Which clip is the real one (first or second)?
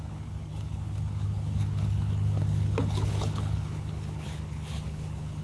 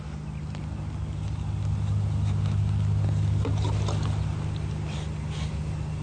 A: second